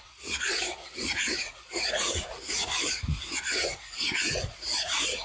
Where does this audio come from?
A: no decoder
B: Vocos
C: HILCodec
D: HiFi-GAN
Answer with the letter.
B